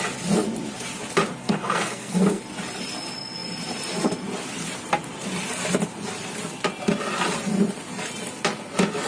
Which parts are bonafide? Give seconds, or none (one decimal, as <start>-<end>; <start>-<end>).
0.0-1.4; 2.4-9.1